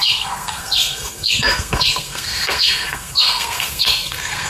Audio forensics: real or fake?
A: fake